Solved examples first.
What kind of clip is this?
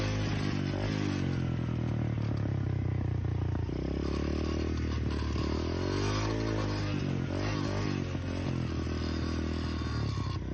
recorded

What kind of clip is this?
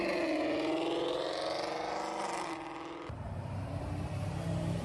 recorded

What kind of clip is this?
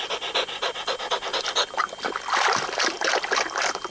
recorded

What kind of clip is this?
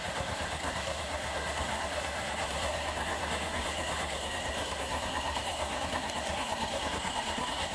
remade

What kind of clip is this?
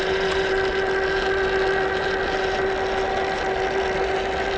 recorded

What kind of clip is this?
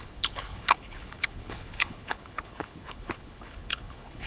remade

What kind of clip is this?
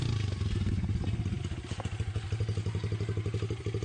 recorded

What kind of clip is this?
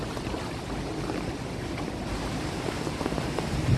recorded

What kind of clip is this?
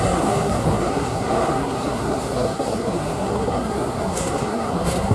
remade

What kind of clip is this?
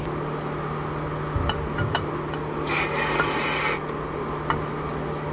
recorded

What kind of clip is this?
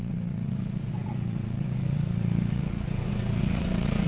remade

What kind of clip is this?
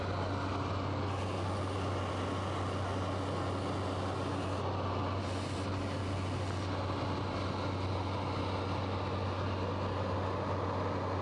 recorded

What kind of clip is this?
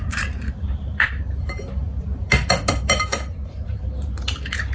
remade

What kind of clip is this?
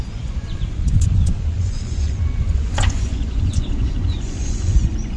remade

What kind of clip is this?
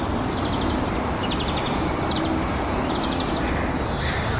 recorded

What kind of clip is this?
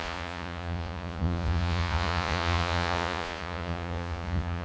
remade